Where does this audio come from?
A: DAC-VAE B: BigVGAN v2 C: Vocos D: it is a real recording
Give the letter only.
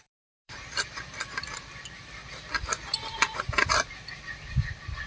B